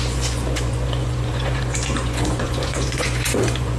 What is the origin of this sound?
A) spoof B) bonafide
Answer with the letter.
A